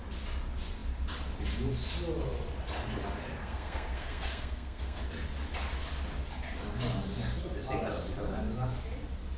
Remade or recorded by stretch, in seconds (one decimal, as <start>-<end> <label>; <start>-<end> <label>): 0.0-3.4 recorded; 3.4-5.0 remade; 5.0-9.4 recorded

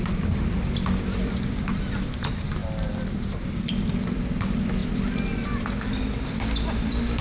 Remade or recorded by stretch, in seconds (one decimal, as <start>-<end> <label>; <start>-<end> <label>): 0.0-4.8 remade; 4.8-6.5 recorded; 6.5-7.2 remade